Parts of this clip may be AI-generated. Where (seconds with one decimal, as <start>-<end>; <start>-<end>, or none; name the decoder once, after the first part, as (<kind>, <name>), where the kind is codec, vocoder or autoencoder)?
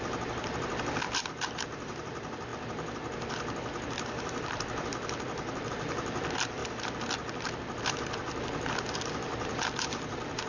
0.0-6.6 (vocoder, BigVGAN v2); 7.8-8.2; 9.1-10.5